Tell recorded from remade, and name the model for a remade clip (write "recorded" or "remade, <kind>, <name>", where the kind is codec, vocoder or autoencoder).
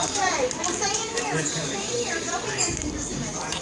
remade, vocoder, BigVGAN v2